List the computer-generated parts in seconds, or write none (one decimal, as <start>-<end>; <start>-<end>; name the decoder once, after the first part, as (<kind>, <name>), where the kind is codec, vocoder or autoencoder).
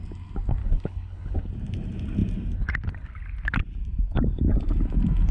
0.6-1.5 (codec, HILCodec)